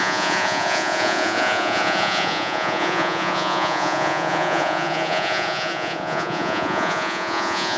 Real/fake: fake